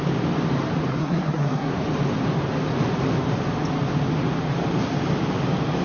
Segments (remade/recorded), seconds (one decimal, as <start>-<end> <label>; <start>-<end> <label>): 0.0-0.9 recorded; 0.9-1.7 remade; 1.7-5.8 recorded